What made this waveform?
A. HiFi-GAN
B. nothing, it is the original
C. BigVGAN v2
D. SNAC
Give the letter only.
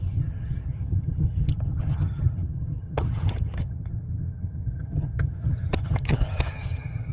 A